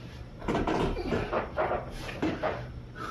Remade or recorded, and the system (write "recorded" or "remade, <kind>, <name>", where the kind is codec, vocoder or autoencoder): remade, vocoder, BigVGAN v2